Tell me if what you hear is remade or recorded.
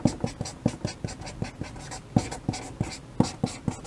recorded